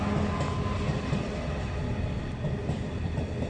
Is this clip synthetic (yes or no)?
no